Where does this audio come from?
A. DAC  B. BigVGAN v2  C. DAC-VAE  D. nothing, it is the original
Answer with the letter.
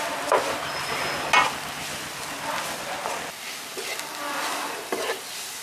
D